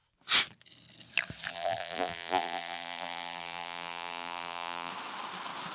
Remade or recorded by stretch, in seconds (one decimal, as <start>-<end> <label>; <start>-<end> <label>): 0.0-1.5 recorded; 1.5-4.9 remade; 4.9-5.7 recorded